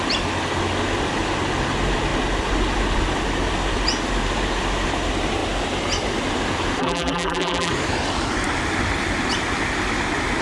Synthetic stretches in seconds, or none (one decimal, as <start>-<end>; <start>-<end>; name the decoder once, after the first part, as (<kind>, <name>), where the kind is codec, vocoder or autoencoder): 6.8-7.7 (vocoder, BigVGAN v2)